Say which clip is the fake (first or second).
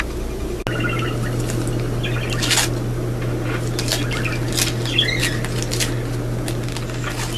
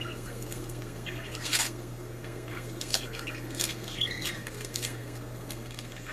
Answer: second